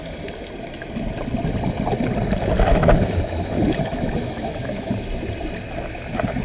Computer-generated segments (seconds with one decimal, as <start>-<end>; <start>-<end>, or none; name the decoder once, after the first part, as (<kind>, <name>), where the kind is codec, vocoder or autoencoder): 2.7-4.9 (autoencoder, DAC-VAE)